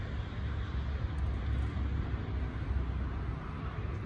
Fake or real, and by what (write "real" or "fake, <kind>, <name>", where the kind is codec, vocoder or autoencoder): real